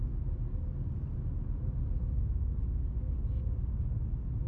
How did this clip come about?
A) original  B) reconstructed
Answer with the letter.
A